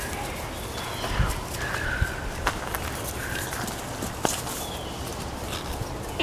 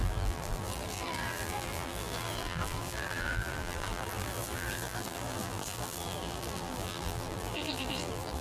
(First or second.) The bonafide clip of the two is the first